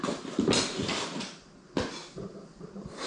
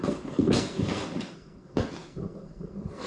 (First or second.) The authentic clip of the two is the first